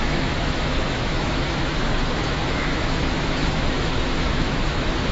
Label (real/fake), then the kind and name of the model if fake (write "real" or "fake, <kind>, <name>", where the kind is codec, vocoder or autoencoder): fake, autoencoder, DAC-VAE